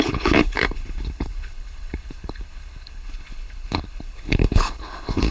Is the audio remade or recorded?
remade